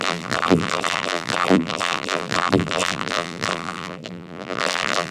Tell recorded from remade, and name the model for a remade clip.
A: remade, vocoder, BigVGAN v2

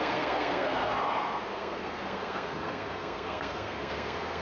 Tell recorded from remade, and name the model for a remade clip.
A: remade, codec, SNAC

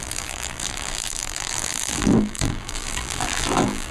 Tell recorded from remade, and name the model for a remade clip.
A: remade, vocoder, BigVGAN v2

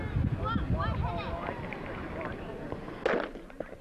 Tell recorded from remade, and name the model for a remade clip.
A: recorded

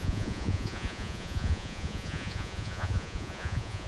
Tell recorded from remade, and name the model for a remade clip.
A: remade, vocoder, Vocos